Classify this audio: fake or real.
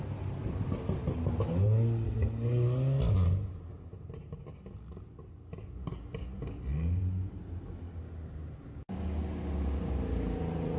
real